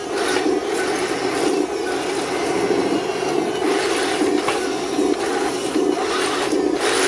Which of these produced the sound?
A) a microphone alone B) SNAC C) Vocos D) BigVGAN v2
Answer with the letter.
A